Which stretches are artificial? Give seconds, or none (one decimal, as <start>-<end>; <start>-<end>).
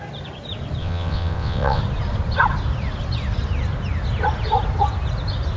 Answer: 0.8-1.8